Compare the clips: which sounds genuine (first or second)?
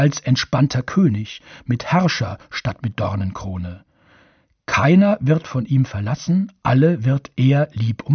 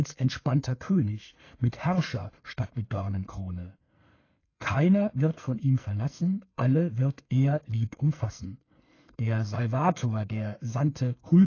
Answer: first